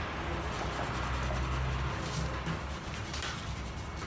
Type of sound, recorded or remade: recorded